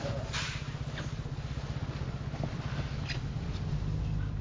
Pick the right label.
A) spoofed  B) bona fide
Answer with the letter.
B